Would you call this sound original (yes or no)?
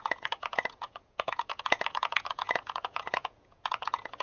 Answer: no